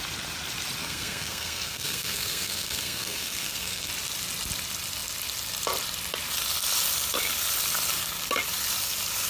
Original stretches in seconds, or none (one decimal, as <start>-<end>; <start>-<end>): 0.0-0.8; 3.9-9.3